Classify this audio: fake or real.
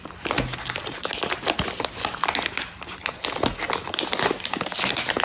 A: real